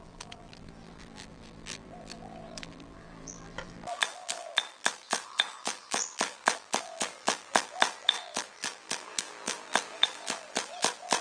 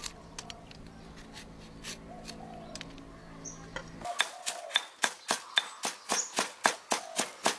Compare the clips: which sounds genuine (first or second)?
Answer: second